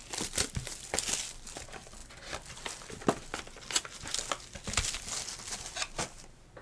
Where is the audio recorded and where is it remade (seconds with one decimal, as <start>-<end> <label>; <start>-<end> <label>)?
0.0-6.6 recorded